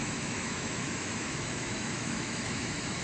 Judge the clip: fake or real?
fake